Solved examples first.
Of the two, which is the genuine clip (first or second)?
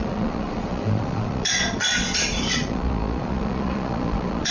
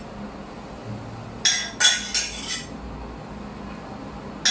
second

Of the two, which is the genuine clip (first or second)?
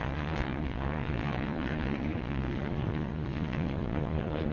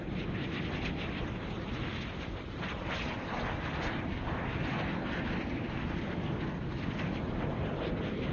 second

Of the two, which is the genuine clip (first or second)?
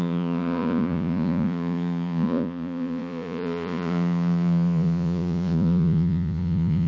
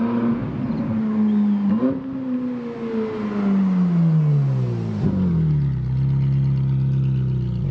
second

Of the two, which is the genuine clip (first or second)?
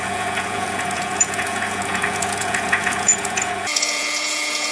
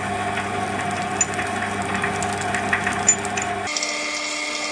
second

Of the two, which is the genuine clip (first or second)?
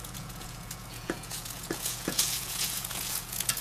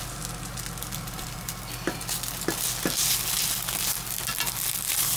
second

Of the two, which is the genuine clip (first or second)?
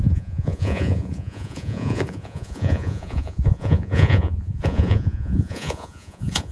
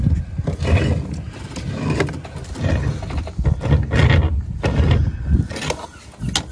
second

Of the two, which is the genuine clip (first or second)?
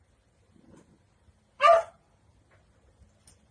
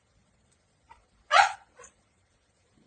first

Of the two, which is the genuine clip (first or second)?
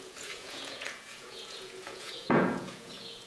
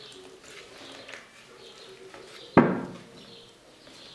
second